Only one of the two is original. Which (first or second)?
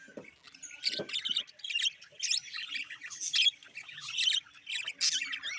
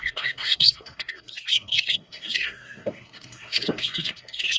first